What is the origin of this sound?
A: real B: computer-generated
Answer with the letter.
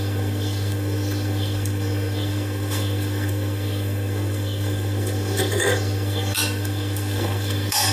B